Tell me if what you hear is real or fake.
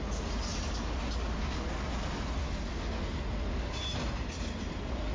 real